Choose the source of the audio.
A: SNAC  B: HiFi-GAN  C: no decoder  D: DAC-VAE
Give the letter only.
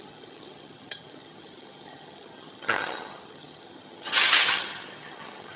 B